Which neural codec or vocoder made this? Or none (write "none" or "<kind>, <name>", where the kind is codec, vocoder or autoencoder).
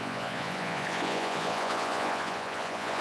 vocoder, Vocos